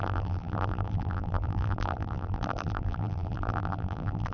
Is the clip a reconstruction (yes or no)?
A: yes